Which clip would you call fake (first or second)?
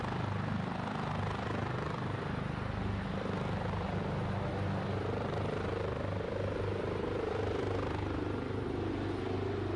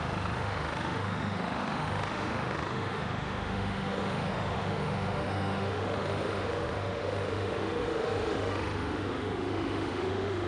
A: second